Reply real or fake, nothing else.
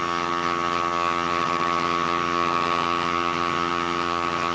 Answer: fake